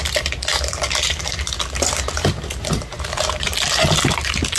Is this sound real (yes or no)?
yes